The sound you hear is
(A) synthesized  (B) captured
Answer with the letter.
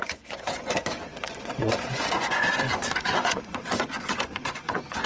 A